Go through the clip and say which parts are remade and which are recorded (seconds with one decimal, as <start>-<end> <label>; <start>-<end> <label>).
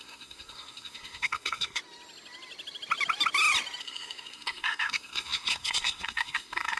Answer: 0.0-1.8 remade; 1.8-3.8 recorded; 3.8-6.8 remade